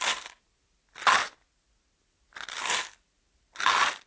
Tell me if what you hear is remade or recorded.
recorded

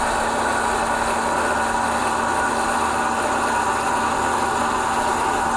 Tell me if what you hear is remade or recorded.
recorded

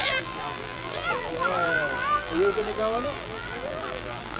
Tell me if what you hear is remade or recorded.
remade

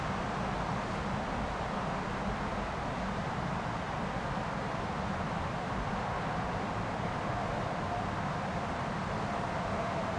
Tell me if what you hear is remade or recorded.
remade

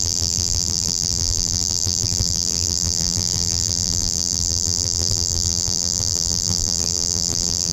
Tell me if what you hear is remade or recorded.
remade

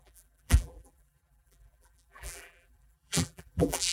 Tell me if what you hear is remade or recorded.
remade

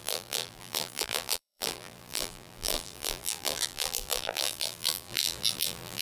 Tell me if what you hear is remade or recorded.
remade